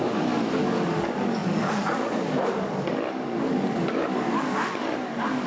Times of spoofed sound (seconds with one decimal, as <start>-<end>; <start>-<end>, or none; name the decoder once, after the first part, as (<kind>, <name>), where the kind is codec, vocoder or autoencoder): 0.0-5.5 (codec, DAC)